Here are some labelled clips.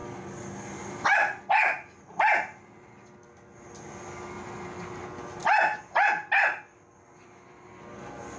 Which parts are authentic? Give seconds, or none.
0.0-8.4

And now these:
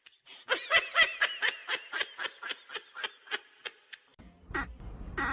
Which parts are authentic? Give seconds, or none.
0.0-5.3

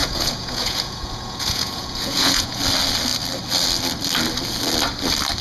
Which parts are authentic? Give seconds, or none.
2.6-5.4

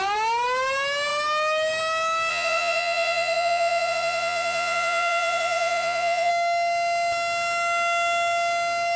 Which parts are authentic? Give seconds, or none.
0.0-2.3; 6.3-9.0

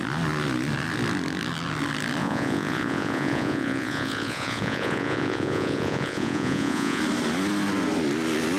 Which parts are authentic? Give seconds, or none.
0.0-2.2; 7.0-8.6